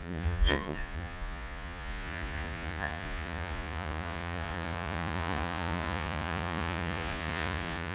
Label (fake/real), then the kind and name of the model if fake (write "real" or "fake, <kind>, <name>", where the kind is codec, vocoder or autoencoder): fake, vocoder, Vocos